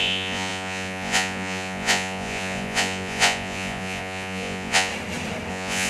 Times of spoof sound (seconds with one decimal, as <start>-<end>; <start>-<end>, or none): 0.0-4.9; 5.5-5.9